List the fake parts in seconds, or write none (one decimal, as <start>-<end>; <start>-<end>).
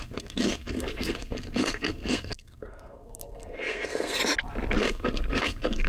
0.0-4.2; 4.8-5.9